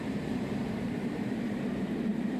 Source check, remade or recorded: remade